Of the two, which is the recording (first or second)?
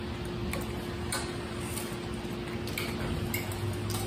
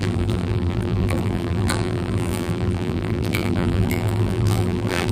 first